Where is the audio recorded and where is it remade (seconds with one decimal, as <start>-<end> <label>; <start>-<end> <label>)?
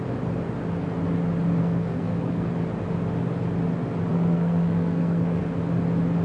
0.0-1.6 recorded; 1.6-2.5 remade; 2.5-4.1 recorded; 4.1-5.4 remade; 5.4-6.2 recorded